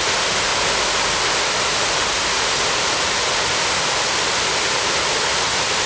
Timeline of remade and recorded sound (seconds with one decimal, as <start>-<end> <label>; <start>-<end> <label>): 0.0-5.9 recorded

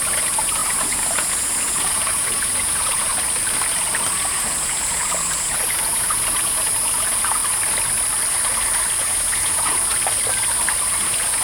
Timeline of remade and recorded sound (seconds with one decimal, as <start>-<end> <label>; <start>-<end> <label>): 0.0-3.1 remade; 3.1-4.1 recorded; 4.1-7.4 remade; 7.4-9.0 recorded; 9.0-9.9 remade; 9.9-11.0 recorded; 11.0-11.4 remade

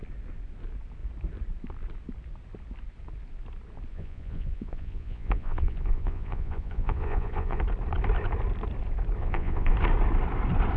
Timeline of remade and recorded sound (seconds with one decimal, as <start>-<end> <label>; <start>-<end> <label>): 0.0-3.9 recorded; 3.9-7.6 remade; 7.6-9.2 recorded; 9.2-9.7 remade; 9.7-10.8 recorded

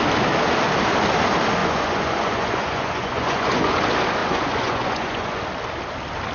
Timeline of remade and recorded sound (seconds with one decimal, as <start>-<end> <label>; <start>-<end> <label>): 0.0-1.6 recorded; 1.6-3.8 remade; 3.8-4.2 recorded; 4.2-5.4 remade; 5.4-6.3 recorded

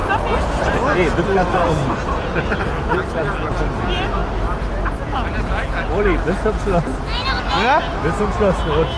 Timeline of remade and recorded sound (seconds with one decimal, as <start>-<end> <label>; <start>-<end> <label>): 0.0-9.0 recorded

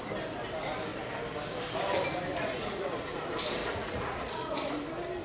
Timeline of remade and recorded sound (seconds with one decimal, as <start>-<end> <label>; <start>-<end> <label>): 0.0-2.3 recorded; 2.3-2.9 remade; 2.9-3.6 recorded; 3.6-4.7 remade; 4.7-5.2 recorded

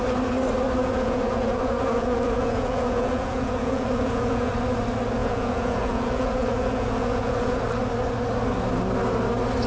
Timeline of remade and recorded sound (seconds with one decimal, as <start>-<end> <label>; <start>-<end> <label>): 0.0-0.8 recorded; 0.8-4.5 remade; 4.5-5.2 recorded; 5.2-7.6 remade; 7.6-9.7 recorded

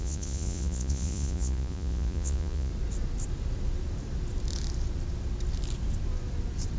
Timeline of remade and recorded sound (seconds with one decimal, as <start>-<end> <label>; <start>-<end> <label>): 0.0-2.7 remade; 2.7-6.8 recorded